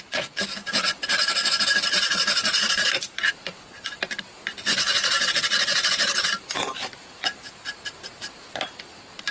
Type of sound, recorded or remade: remade